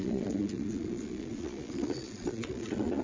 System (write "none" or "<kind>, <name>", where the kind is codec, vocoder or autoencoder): vocoder, Vocos